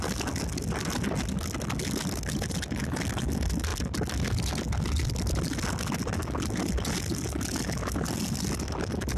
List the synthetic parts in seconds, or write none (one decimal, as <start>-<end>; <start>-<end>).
none

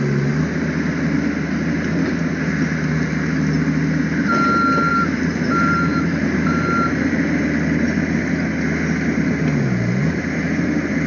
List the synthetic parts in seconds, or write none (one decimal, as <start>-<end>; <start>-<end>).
4.9-7.2

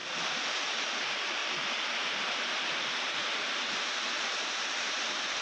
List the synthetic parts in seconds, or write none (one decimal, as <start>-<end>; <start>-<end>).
0.6-5.4

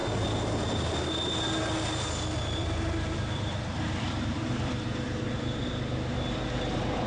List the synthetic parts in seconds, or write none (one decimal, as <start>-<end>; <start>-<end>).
2.6-5.7

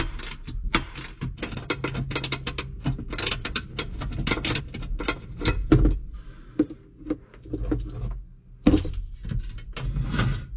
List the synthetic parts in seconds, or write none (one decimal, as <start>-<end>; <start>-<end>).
3.4-4.6